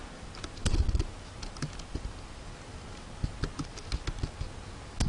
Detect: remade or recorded recorded